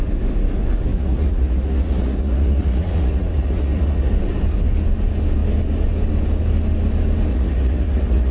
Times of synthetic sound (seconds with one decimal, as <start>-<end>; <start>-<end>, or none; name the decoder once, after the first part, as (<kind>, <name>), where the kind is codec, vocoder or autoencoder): 0.9-4.1 (vocoder, Vocos); 7.3-8.3